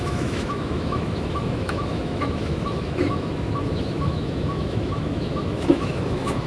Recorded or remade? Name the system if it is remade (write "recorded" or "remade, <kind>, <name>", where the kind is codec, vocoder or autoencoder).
remade, autoencoder, DAC-VAE